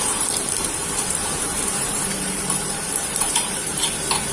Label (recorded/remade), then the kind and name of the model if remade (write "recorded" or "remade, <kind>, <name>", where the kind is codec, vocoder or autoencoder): remade, vocoder, BigVGAN v2